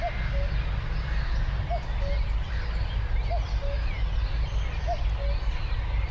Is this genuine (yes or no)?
yes